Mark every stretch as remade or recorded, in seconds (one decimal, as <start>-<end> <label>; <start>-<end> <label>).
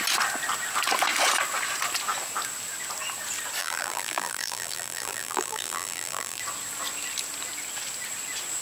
0.0-3.6 recorded; 3.6-6.4 remade; 6.4-8.6 recorded